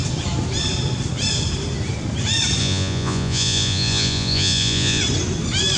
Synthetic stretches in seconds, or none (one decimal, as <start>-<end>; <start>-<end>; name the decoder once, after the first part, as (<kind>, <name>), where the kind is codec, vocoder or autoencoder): 2.6-5.0 (vocoder, Vocos)